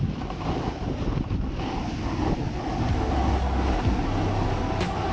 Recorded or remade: recorded